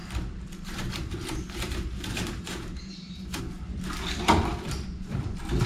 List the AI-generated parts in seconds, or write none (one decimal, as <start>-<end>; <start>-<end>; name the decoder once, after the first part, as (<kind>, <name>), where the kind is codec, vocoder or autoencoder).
0.0-3.4 (vocoder, BigVGAN v2)